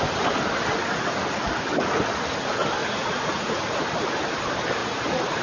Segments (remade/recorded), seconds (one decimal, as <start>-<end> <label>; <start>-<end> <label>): 0.0-2.8 recorded; 2.8-3.8 remade; 3.8-4.8 recorded; 4.8-5.4 remade